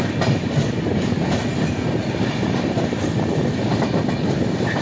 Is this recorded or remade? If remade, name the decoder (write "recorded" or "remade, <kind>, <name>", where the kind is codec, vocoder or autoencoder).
recorded